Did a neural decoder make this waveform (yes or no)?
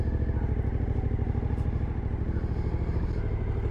no